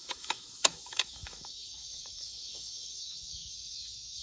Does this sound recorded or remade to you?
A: remade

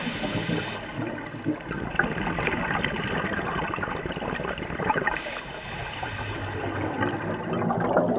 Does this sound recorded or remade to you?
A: recorded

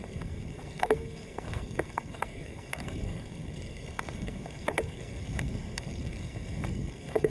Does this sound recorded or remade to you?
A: remade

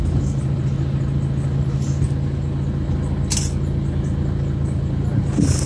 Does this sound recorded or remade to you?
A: recorded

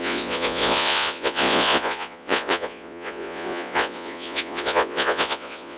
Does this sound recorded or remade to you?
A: remade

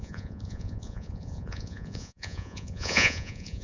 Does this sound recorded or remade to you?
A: remade